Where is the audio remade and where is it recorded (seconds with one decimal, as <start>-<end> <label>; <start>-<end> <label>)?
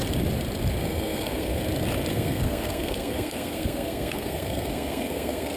0.0-0.8 recorded; 0.8-1.6 remade; 1.6-2.1 recorded; 2.1-5.6 remade